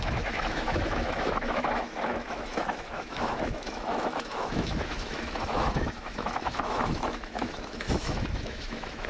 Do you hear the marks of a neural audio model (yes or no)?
yes